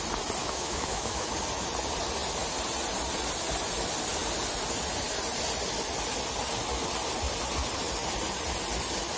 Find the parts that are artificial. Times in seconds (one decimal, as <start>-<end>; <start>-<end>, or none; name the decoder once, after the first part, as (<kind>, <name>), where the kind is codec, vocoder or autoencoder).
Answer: 0.4-1.3 (autoencoder, DAC-VAE)